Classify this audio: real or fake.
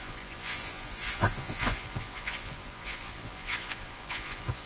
fake